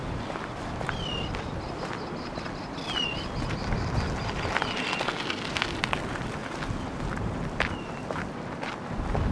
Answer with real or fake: real